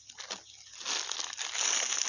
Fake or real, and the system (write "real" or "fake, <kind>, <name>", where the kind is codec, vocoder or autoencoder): real